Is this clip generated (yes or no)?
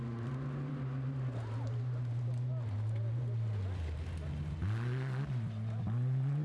no